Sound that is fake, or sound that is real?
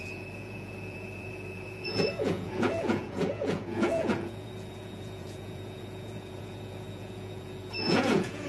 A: fake